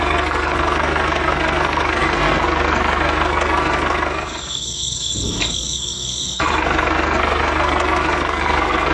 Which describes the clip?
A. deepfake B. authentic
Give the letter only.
A